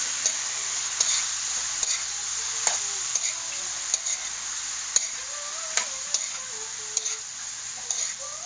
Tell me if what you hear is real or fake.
real